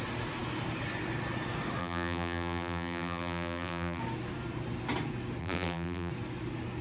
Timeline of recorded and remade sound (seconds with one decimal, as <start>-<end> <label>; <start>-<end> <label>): 0.0-1.8 recorded; 1.8-4.0 remade; 4.0-5.4 recorded; 5.4-6.1 remade; 6.1-6.8 recorded

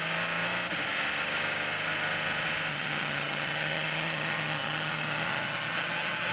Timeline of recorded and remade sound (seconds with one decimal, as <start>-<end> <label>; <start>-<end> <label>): 0.0-2.7 recorded; 2.7-6.3 remade

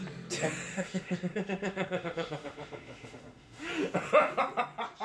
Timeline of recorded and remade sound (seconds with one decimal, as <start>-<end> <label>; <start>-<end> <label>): 0.0-0.7 recorded; 0.7-3.7 remade; 3.7-5.0 recorded

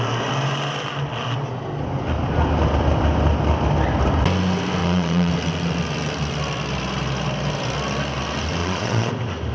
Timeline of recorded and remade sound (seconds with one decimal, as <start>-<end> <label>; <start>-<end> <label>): 0.0-4.8 recorded; 4.8-5.3 remade; 5.3-8.6 recorded; 8.6-9.1 remade; 9.1-9.5 recorded

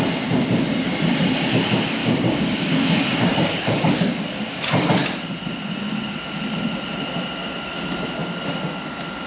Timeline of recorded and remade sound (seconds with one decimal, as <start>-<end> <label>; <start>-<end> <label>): 0.0-2.0 recorded; 2.0-4.2 remade; 4.2-9.3 recorded

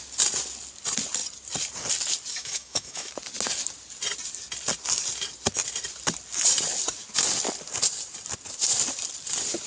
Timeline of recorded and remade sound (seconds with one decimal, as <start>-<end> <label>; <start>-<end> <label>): 0.0-2.3 recorded; 2.3-3.1 remade; 3.1-9.7 recorded

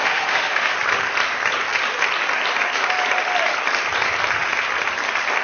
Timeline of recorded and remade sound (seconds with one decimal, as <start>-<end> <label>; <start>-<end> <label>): 0.0-0.7 remade; 0.7-5.4 recorded